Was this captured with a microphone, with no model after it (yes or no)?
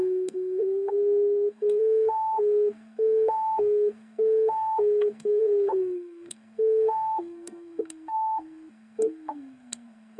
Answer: no